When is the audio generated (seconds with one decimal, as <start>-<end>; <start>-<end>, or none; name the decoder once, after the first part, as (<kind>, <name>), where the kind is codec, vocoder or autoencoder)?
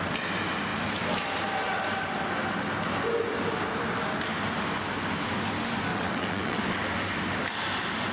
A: 5.9-6.6 (vocoder, WaveNeXt)